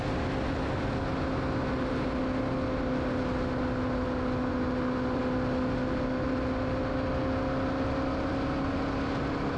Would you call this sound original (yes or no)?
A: yes